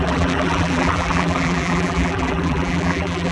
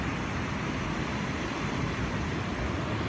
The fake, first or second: first